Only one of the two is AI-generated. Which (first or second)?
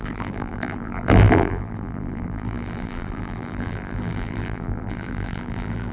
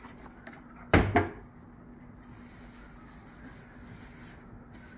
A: first